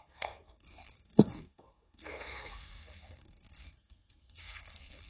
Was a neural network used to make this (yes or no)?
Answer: yes